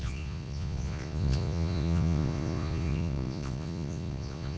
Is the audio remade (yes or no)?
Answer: yes